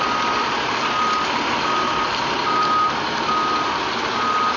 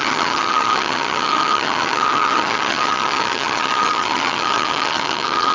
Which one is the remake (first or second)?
second